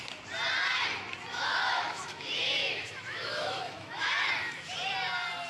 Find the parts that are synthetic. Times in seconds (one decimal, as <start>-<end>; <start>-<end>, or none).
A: 1.3-4.1